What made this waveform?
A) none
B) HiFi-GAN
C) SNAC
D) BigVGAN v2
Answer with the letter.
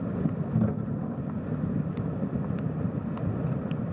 A